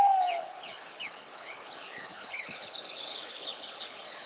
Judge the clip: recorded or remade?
remade